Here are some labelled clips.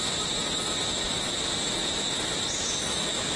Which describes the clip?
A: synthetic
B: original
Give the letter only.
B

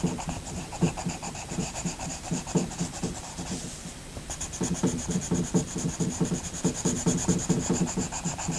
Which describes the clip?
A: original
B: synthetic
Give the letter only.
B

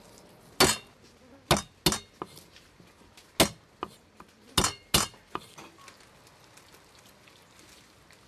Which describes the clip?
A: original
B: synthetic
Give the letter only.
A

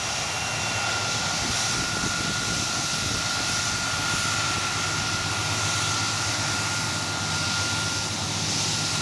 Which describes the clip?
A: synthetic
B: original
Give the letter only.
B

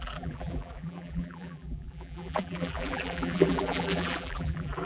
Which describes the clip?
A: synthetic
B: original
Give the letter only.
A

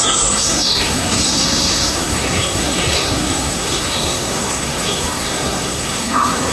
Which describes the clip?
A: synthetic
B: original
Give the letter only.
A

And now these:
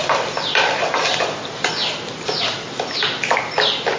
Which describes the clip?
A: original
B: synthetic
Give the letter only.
A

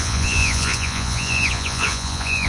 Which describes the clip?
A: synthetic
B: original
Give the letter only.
A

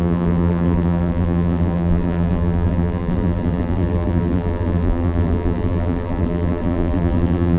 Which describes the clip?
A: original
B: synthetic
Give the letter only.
B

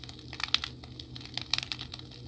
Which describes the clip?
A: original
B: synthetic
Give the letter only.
A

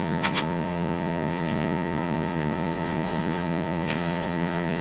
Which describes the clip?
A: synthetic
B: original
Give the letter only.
A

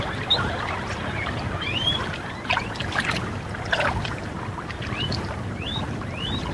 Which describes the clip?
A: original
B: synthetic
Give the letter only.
A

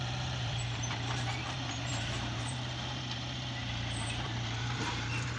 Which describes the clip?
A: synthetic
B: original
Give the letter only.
A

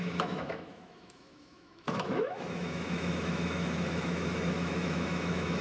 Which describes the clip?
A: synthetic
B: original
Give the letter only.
A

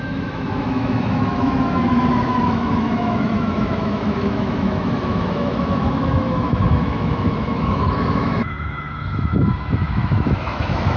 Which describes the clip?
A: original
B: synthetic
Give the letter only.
B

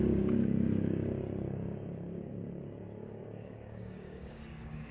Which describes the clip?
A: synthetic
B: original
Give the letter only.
A